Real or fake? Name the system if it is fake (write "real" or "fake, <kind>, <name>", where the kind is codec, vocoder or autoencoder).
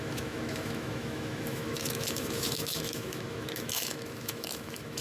fake, autoencoder, DAC-VAE